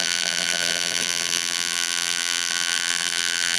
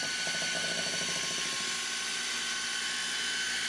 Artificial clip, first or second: first